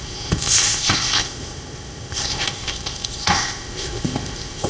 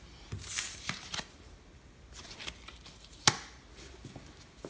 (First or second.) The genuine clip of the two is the second